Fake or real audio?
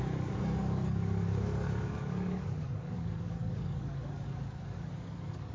fake